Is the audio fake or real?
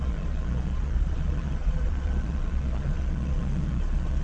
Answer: fake